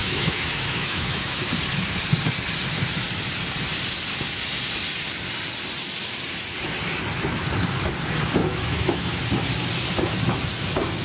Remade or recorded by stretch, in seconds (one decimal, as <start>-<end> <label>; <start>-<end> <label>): 0.0-1.5 remade; 1.5-8.4 recorded; 8.4-9.2 remade; 9.2-11.0 recorded